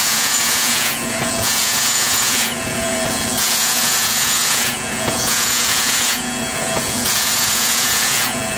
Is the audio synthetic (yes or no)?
yes